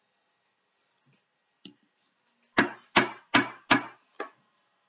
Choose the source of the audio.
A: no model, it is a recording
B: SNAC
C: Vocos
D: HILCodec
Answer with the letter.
A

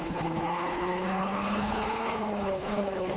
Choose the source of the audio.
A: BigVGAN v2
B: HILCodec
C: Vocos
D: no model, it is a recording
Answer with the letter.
B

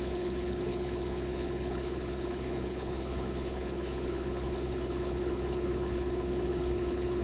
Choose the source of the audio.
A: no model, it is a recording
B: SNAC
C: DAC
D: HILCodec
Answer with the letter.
D